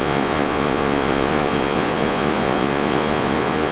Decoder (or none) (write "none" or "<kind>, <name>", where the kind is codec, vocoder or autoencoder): vocoder, Vocos